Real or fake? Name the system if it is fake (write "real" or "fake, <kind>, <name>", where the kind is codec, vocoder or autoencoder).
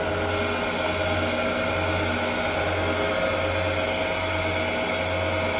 real